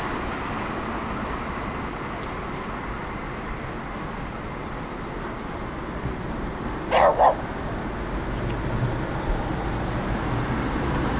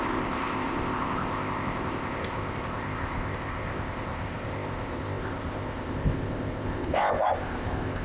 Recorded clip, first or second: first